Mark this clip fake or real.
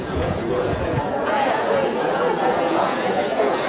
fake